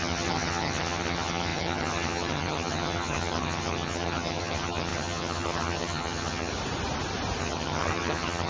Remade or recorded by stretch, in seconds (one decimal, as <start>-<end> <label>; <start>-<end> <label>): 0.0-6.5 remade; 6.5-7.4 recorded; 7.4-8.5 remade